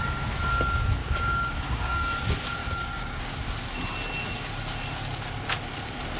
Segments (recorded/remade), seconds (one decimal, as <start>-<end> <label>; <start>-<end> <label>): 0.0-1.0 recorded; 1.0-2.2 remade; 2.2-2.6 recorded; 2.6-3.2 remade; 3.2-6.2 recorded